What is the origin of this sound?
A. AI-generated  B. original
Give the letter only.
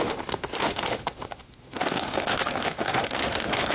A